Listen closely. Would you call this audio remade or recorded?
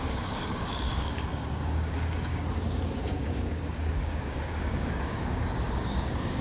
remade